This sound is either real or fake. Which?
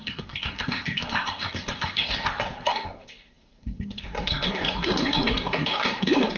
fake